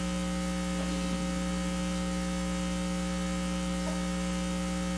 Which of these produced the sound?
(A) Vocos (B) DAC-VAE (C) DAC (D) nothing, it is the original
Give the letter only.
D